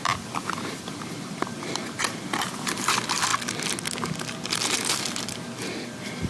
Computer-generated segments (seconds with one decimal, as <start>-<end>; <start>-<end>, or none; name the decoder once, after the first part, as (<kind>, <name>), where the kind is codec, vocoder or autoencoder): 0.0-3.3 (vocoder, BigVGAN v2); 4.9-6.3